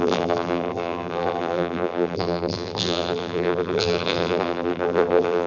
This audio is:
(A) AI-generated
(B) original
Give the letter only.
A